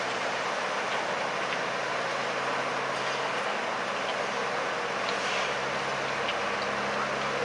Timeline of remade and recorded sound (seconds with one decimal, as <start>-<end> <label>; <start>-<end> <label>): 0.0-7.4 recorded